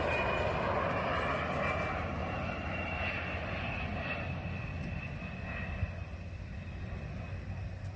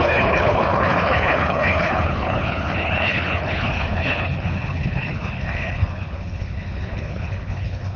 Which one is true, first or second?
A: first